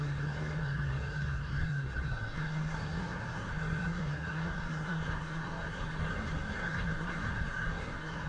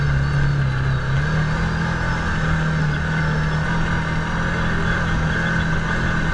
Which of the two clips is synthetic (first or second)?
first